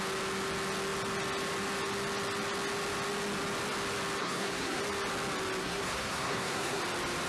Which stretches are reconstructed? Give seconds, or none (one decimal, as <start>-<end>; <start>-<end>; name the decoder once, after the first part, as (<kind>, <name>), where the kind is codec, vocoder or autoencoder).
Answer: 4.2-4.8 (codec, SNAC); 5.6-6.8